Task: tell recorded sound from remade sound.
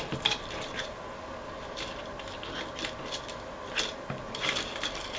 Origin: recorded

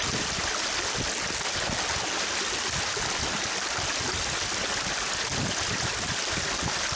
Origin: recorded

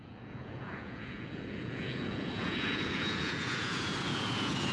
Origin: remade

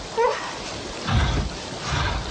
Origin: recorded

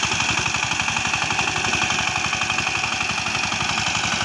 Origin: recorded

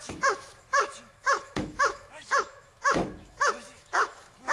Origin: remade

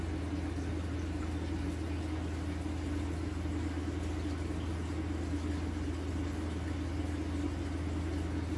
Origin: recorded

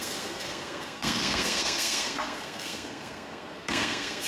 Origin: remade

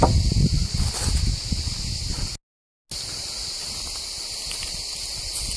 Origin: recorded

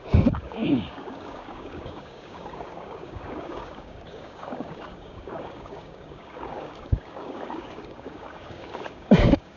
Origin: remade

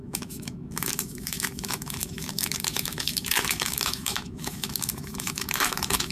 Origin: remade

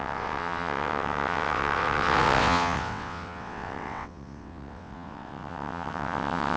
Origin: remade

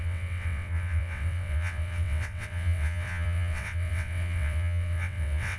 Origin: remade